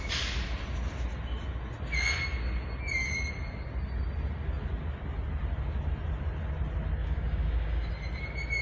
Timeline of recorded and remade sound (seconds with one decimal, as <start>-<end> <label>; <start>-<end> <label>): 0.0-7.0 recorded; 7.0-7.9 remade; 7.9-8.6 recorded